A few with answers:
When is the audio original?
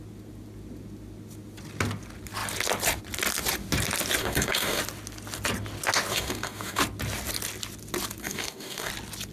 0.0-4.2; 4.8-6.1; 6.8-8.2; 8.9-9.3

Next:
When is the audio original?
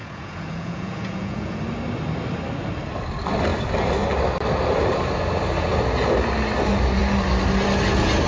1.6-8.3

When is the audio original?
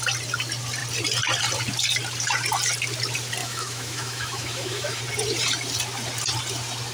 0.0-3.4; 5.0-6.9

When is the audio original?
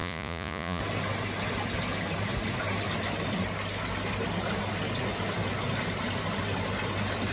0.8-7.3